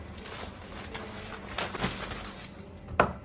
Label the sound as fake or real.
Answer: real